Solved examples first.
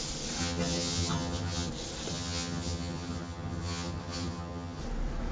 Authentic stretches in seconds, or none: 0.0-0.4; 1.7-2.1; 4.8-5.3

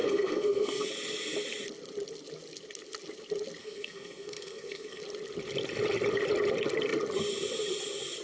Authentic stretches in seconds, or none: 0.9-3.6; 5.0-8.2

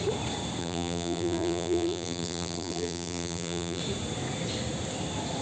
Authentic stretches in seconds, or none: 0.0-0.6; 3.8-5.4

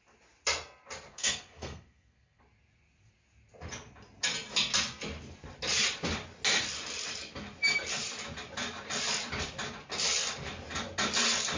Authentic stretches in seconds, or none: 0.0-1.1; 2.4-11.6

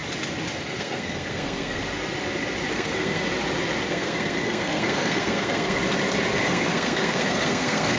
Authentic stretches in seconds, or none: 0.0-0.6; 1.8-2.7; 3.2-3.9; 5.8-6.4

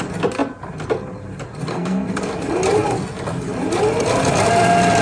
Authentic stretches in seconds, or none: 0.0-1.7; 2.2-5.0